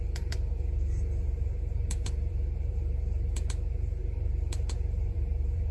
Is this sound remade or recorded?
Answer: remade